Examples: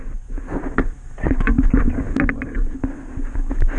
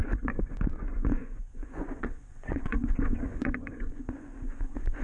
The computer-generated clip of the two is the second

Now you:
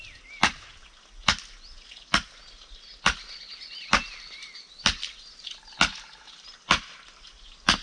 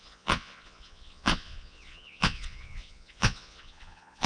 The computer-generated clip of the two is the second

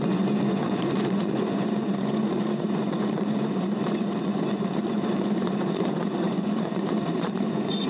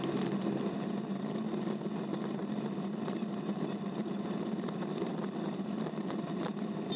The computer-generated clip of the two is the first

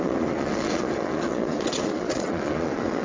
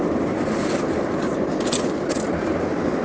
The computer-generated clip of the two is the first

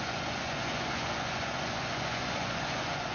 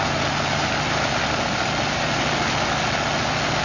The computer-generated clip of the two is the first